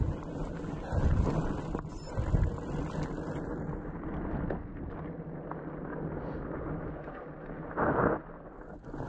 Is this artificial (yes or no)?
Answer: no